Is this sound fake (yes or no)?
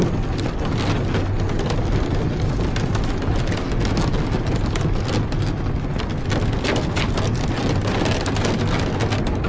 no